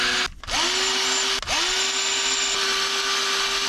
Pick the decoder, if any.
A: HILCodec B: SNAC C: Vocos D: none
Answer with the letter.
D